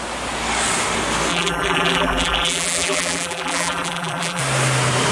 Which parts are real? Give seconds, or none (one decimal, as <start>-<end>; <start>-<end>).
0.0-1.3; 4.4-5.1